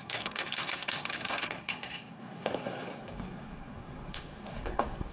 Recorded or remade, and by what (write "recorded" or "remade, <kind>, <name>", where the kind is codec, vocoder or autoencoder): remade, codec, SNAC